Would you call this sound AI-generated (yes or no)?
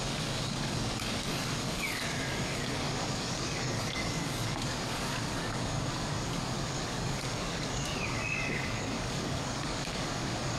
yes